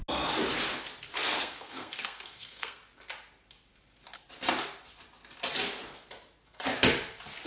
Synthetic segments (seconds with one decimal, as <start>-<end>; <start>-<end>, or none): 1.4-2.8